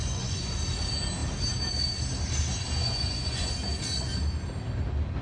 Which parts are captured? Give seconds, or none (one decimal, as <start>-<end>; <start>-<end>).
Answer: 0.5-2.8; 3.5-5.2